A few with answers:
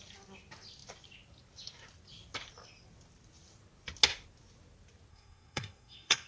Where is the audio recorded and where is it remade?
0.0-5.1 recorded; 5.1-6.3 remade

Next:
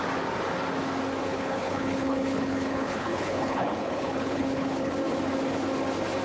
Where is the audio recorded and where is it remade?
0.0-1.2 recorded; 1.2-4.9 remade; 4.9-6.2 recorded